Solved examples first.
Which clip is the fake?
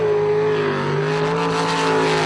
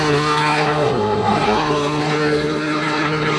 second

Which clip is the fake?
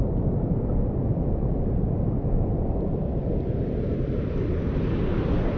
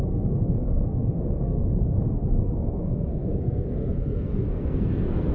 second